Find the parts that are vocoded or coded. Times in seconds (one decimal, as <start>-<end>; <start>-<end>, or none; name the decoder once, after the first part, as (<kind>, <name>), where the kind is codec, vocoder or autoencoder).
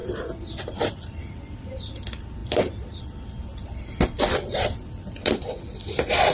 0.0-6.3 (vocoder, BigVGAN v2)